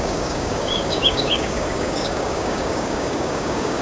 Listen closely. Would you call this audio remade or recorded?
remade